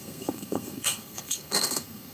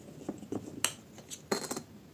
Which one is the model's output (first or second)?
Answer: first